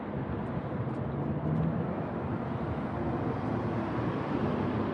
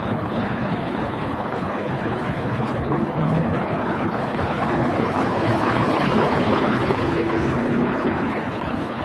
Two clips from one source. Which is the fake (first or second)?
second